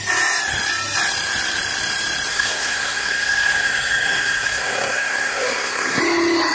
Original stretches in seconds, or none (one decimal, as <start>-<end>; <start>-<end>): 0.0-2.3; 6.0-6.5